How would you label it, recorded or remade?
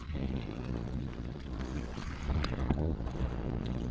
remade